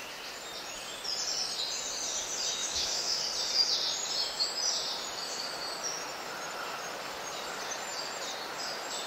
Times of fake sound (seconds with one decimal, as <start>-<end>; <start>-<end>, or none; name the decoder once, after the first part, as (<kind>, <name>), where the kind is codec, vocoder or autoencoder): 2.6-3.2 (autoencoder, DAC-VAE)